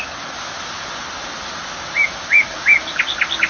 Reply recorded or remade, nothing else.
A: recorded